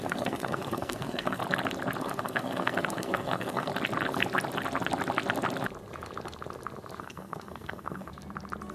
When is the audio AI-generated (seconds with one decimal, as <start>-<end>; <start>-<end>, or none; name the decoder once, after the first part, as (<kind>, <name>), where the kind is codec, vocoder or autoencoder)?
0.0-1.4 (codec, SNAC); 2.0-3.7; 7.0-8.1